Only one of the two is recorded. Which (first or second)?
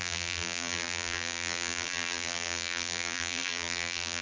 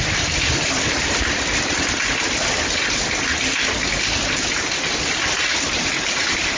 second